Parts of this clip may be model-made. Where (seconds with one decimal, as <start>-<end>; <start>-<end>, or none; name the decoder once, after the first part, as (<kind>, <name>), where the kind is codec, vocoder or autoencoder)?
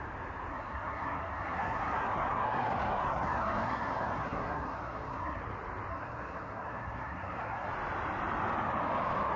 0.5-5.4 (codec, SNAC); 5.9-7.7